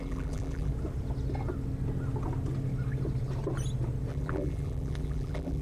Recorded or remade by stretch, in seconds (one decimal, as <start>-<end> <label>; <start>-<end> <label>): 0.0-0.7 remade; 0.7-4.1 recorded; 4.1-5.6 remade